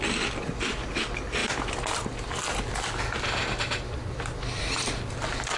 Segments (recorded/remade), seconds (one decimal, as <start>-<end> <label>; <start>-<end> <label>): 0.0-5.6 recorded